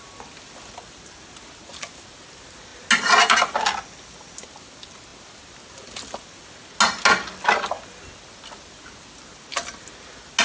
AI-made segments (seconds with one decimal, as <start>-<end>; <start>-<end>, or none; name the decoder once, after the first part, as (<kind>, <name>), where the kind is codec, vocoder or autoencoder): none